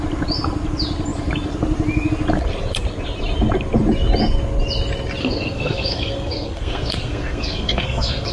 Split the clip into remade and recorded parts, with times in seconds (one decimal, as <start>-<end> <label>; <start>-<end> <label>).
0.0-5.2 recorded; 5.2-8.3 remade